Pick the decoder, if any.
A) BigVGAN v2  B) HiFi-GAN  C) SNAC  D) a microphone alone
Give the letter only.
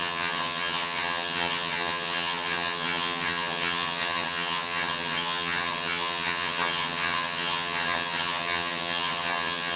B